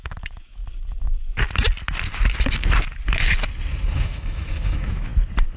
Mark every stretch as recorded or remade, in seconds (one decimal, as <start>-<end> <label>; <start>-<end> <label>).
0.0-0.6 remade; 0.6-4.0 recorded; 4.0-5.1 remade; 5.1-5.6 recorded